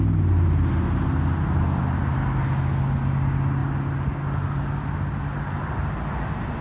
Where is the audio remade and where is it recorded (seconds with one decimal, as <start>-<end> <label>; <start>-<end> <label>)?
0.0-6.6 recorded